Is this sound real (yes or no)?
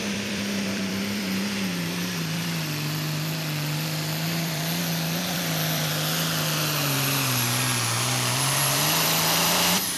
no